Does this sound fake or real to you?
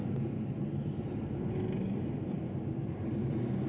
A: real